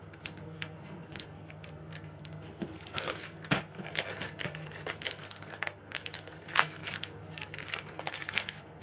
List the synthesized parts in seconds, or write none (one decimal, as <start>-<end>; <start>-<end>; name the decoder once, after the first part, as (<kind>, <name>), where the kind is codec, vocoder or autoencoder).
0.0-8.8 (codec, SNAC)